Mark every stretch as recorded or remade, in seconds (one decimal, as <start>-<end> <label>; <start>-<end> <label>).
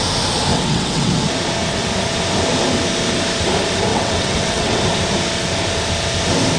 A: 0.0-0.5 recorded; 0.5-1.1 remade; 1.1-3.9 recorded; 3.9-4.8 remade; 4.8-6.6 recorded